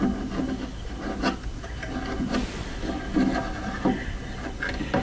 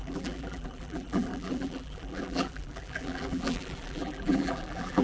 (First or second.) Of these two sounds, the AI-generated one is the second